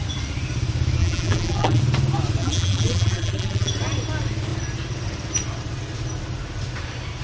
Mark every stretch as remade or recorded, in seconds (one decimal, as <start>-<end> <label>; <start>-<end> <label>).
0.0-1.0 recorded; 1.0-1.8 remade; 1.8-2.4 recorded; 2.4-3.7 remade; 3.7-7.2 recorded